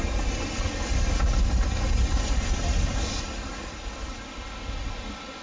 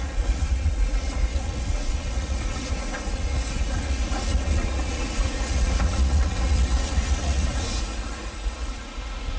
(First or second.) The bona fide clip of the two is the first